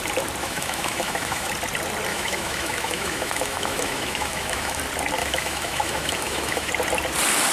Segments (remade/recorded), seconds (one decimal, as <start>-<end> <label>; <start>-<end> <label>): 0.0-0.4 recorded; 0.4-1.5 remade; 1.5-2.1 recorded; 2.1-4.8 remade; 4.8-5.2 recorded; 5.2-6.7 remade; 6.7-7.5 recorded